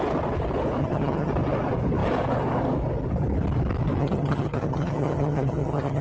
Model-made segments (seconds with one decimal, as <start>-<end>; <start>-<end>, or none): 0.8-1.3; 4.0-6.0